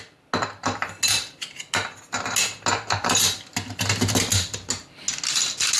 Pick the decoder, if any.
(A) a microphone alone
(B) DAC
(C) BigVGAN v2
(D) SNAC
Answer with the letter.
A